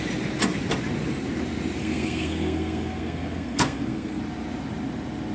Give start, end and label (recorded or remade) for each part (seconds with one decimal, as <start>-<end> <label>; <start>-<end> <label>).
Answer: 0.0-1.8 recorded; 1.8-4.2 remade; 4.2-5.3 recorded